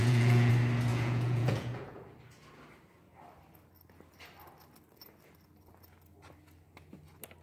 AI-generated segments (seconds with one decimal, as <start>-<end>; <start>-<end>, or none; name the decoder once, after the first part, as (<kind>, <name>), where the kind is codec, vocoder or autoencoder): 0.0-0.5 (vocoder, Vocos); 0.9-2.0